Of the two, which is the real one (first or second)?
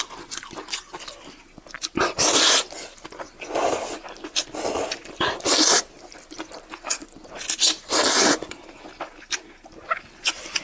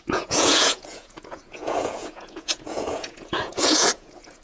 first